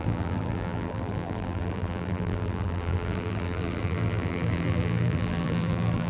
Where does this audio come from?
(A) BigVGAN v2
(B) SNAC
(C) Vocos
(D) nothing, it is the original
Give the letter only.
A